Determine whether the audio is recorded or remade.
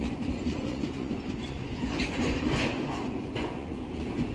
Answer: remade